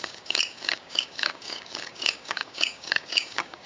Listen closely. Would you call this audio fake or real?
fake